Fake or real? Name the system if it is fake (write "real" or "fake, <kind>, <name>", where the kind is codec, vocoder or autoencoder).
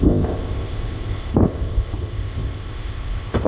fake, codec, ZipCodec